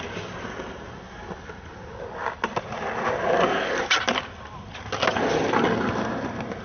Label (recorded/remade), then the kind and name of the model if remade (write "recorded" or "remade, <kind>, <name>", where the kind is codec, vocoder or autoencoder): recorded